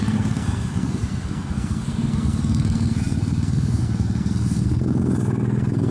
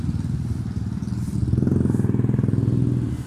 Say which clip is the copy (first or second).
first